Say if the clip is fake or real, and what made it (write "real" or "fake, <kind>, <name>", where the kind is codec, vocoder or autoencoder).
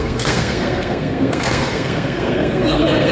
fake, codec, SNAC